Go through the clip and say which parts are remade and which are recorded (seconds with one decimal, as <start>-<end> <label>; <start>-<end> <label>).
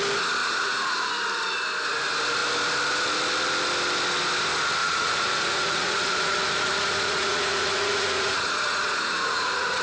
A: 0.0-0.4 recorded; 0.4-1.1 remade; 1.1-4.8 recorded; 4.8-9.8 remade